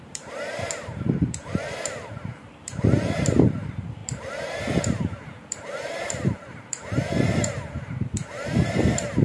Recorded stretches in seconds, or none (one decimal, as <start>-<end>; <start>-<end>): none

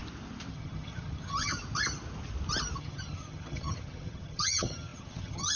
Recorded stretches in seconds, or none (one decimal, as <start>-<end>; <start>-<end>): 0.0-0.5; 1.5-2.8

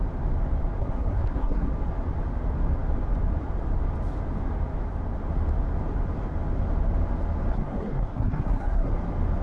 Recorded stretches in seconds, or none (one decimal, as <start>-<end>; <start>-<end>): 0.0-0.8; 1.7-7.5; 8.9-9.4

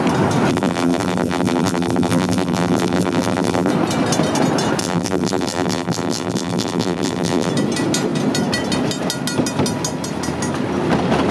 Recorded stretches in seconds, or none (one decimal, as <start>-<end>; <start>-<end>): 0.0-0.5; 3.7-4.8; 7.5-11.3